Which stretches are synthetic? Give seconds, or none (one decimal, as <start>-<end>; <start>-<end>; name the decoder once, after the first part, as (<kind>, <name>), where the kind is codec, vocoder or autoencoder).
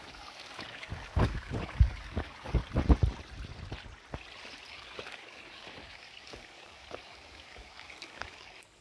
0.0-2.6 (codec, DAC); 4.7-8.8